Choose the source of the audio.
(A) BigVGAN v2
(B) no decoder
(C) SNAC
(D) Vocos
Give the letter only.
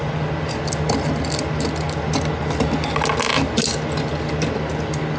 B